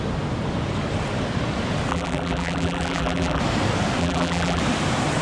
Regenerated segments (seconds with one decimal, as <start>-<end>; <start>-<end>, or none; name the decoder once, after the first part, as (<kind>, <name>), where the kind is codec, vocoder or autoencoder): 1.9-3.4 (vocoder, BigVGAN v2); 4.0-4.6